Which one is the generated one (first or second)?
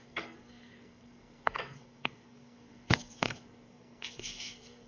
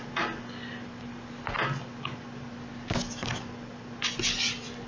first